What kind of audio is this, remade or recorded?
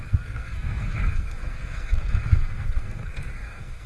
remade